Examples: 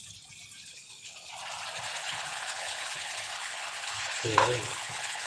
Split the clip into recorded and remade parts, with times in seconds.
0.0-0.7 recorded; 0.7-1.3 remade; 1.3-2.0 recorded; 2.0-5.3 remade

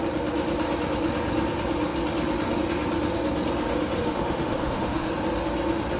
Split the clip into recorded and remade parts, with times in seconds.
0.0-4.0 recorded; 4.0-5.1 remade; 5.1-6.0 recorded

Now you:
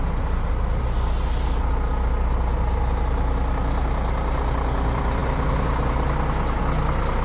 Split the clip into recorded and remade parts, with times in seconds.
0.0-7.2 recorded

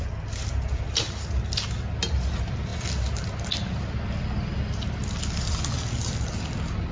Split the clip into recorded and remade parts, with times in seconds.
0.0-6.9 recorded

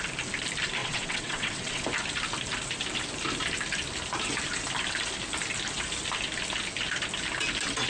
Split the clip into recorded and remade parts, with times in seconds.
0.0-0.8 recorded; 0.8-1.8 remade; 1.8-7.9 recorded